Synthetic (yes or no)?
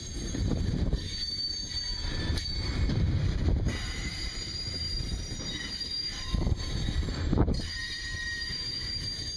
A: yes